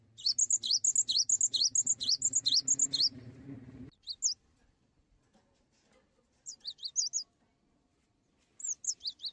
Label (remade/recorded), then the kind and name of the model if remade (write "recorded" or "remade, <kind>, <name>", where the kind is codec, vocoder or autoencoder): recorded